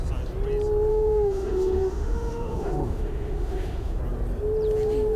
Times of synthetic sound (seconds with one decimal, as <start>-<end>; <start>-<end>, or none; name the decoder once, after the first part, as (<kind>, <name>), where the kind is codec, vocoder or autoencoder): 0.9-4.0 (autoencoder, DAC-VAE)